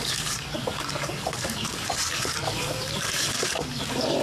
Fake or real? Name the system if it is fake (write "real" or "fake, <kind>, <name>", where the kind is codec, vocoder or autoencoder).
fake, codec, DAC